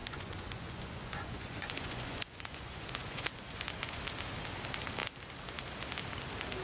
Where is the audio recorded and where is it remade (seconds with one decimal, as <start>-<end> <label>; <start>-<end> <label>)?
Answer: 0.0-4.0 remade; 4.0-6.6 recorded